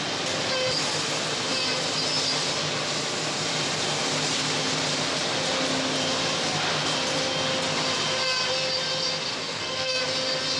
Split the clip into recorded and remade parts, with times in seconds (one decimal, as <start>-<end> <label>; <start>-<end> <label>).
0.0-9.4 recorded; 9.4-10.0 remade; 10.0-10.6 recorded